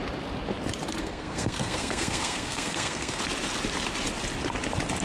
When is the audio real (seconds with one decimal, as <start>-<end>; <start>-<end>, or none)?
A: 0.0-1.0; 3.2-5.0